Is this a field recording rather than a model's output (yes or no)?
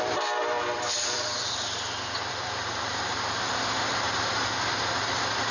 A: no